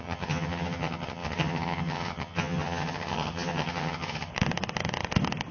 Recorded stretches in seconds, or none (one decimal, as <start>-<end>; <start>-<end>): 4.3-5.5